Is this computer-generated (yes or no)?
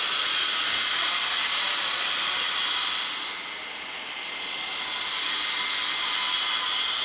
no